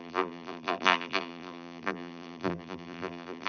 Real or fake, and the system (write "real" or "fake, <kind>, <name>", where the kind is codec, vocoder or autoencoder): fake, vocoder, BigVGAN v2